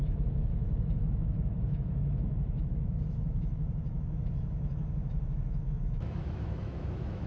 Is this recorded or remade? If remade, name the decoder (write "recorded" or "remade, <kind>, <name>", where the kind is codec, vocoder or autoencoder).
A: remade, autoencoder, DAC-VAE